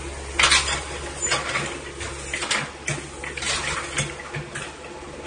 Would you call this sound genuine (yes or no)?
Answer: yes